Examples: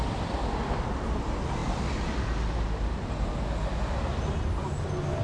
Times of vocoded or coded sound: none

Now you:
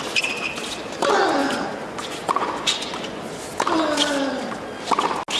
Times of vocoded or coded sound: 1.4-3.2 (vocoder, Vocos)

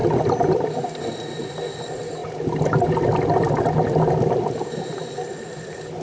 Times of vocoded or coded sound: none

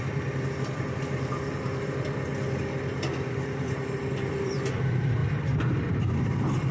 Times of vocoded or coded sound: 0.0-2.3 (vocoder, BigVGAN v2); 3.3-6.7

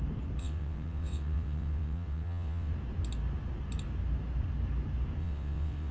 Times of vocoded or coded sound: 0.4-2.7 (vocoder, WaveNeXt); 5.2-5.9

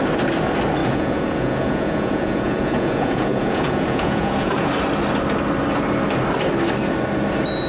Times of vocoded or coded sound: 0.8-4.7 (vocoder, Vocos)

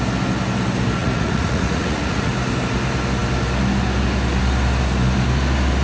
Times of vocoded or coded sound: 1.0-2.3 (vocoder, Vocos)